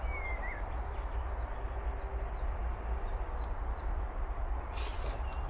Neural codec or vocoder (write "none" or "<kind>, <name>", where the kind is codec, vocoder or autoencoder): none